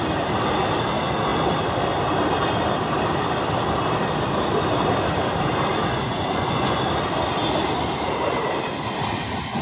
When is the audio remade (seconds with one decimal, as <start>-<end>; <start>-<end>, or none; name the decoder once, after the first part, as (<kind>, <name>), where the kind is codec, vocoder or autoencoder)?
5.9-6.9 (vocoder, Vocos)